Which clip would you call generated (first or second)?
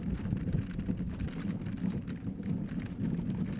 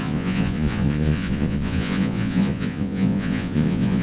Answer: second